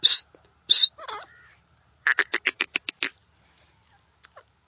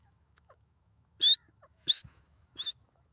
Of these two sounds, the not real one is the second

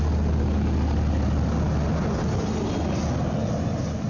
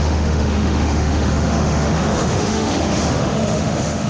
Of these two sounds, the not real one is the second